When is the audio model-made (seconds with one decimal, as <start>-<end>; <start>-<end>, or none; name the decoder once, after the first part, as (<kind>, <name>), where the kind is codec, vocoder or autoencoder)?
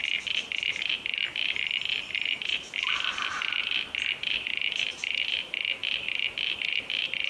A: none